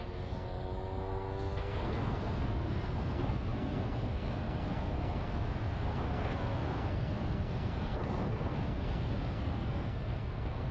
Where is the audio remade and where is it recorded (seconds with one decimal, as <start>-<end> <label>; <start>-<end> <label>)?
0.0-10.7 remade